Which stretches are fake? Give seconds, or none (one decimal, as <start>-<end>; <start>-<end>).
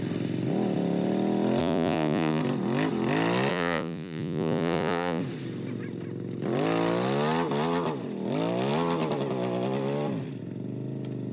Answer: 1.6-2.4; 3.5-5.2